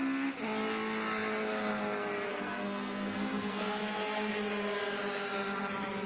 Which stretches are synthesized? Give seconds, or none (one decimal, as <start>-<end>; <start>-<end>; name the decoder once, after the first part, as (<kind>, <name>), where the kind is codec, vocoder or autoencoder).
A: 2.3-4.3 (codec, SNAC)